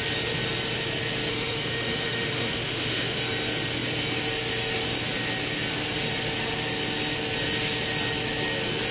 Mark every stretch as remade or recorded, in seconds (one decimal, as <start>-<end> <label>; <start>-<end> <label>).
0.0-1.3 recorded; 1.3-3.2 remade; 3.2-8.9 recorded